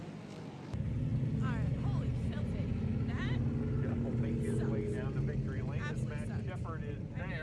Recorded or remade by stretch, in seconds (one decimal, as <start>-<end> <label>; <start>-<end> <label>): 0.0-7.4 recorded